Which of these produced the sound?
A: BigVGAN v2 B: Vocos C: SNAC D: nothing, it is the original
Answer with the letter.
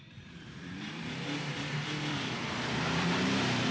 A